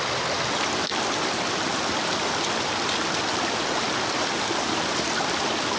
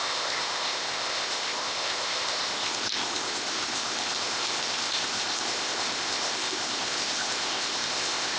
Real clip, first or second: first